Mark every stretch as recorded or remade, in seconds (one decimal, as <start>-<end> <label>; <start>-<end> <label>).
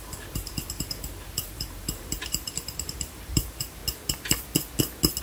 0.0-3.8 remade; 3.8-5.2 recorded